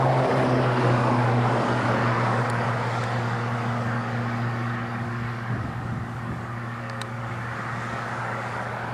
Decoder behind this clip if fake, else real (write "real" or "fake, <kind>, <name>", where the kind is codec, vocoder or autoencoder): fake, codec, DAC